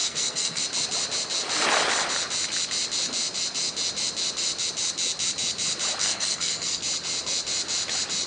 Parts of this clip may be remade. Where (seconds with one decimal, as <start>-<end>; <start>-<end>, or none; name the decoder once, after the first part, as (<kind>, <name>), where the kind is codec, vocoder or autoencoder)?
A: 0.0-0.6 (codec, SNAC); 6.0-6.8